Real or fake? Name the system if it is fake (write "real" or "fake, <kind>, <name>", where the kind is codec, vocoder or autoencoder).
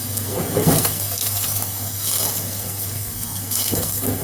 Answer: fake, codec, SNAC